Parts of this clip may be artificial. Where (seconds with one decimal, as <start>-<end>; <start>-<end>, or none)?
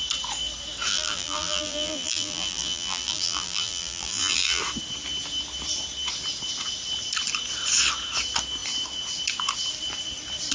0.9-4.6